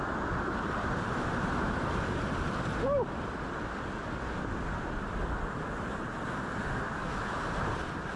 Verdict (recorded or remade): recorded